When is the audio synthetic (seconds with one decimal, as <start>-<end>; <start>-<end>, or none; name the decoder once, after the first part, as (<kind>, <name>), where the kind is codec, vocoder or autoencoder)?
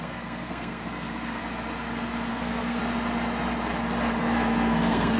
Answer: 0.0-1.4 (codec, SNAC); 2.3-2.8; 4.2-5.2